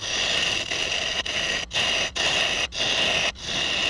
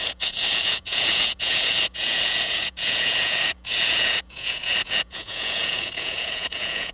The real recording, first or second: first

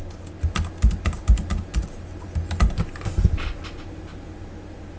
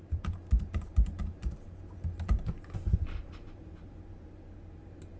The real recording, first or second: first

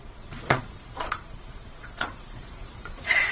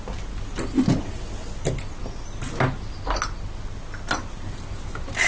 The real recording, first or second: second